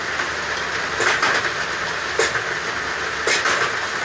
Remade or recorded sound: recorded